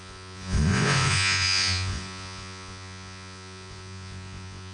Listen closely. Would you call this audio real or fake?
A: fake